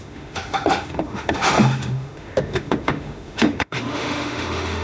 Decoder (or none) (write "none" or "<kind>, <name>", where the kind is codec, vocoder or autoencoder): autoencoder, DAC-VAE